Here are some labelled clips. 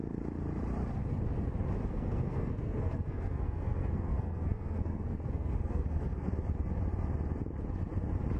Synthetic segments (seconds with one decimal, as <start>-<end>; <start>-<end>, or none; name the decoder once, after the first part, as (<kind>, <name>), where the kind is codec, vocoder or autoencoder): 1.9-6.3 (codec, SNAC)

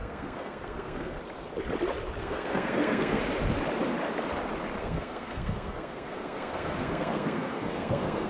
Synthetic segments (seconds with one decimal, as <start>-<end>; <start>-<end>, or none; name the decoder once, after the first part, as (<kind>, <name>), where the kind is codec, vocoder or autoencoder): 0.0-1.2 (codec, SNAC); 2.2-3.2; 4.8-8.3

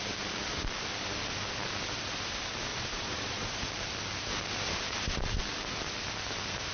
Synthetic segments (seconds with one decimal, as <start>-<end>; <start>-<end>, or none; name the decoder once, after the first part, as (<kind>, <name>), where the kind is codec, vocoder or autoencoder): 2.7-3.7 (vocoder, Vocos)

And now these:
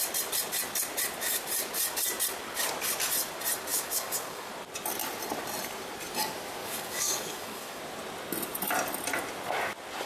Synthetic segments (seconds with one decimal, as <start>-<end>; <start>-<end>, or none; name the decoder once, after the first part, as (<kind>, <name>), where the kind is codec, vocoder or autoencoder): 3.7-4.5 (codec, DAC); 6.6-7.8

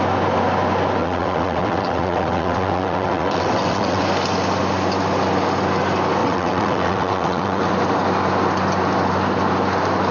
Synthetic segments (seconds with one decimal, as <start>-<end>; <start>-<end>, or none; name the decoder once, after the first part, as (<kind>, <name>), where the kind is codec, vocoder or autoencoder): 1.0-4.0 (vocoder, WaveNeXt); 6.2-7.6

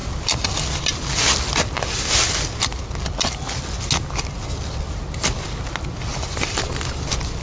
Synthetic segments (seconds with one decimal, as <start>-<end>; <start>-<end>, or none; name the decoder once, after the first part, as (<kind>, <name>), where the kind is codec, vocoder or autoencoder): 6.1-6.7 (vocoder, BigVGAN v2)